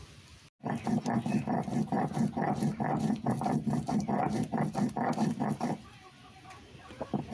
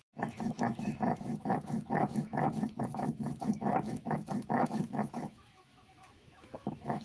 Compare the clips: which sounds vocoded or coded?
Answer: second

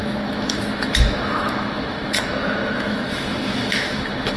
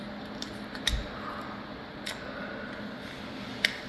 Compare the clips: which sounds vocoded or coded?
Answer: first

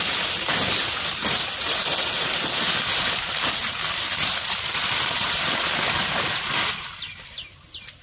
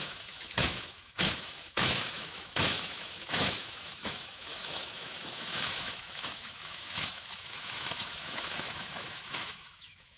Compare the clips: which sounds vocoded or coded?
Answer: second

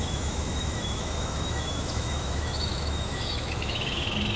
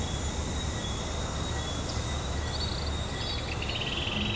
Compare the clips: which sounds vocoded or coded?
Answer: first